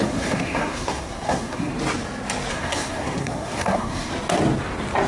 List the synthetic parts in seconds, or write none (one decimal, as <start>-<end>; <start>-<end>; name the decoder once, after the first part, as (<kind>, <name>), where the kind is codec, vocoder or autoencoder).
0.0-1.7 (codec, SNAC); 2.5-4.1